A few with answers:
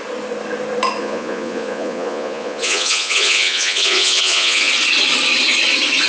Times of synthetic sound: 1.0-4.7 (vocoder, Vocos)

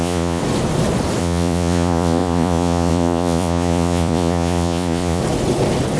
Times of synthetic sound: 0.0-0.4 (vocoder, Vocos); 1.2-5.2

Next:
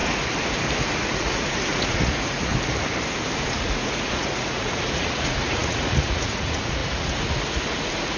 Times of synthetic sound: 1.1-2.5 (vocoder, Vocos); 3.4-8.2

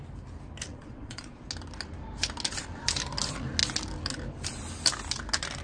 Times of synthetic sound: 0.7-1.4 (vocoder, Vocos)

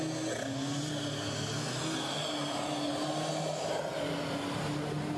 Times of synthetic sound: none